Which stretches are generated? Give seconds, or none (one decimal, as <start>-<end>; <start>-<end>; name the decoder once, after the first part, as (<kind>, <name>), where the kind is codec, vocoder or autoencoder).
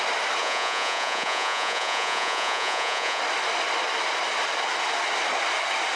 0.4-3.2 (vocoder, Vocos)